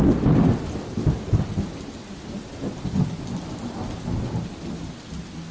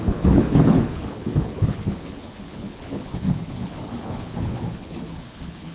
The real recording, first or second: first